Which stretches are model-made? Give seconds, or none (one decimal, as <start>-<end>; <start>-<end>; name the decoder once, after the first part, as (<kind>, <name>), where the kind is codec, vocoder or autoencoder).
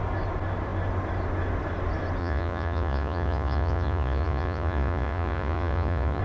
2.2-6.2 (vocoder, Vocos)